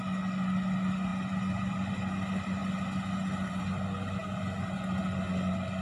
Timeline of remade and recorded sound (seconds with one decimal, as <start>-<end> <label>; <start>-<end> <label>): 0.0-5.8 recorded